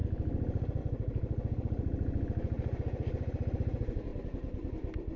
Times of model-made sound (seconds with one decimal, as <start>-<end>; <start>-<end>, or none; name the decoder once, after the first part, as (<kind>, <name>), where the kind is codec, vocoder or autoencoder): 4.1-4.7 (vocoder, BigVGAN v2)